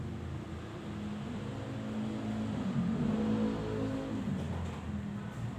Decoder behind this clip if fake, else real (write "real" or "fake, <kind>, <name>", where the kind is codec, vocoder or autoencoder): real